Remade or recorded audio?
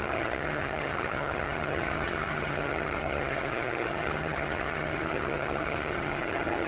remade